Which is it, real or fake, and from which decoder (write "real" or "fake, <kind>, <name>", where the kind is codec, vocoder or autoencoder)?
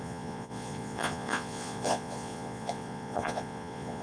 fake, vocoder, Vocos